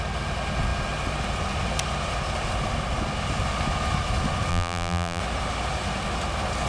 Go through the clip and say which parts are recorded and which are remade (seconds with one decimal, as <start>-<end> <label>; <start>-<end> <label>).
0.0-4.5 recorded; 4.5-5.2 remade; 5.2-6.7 recorded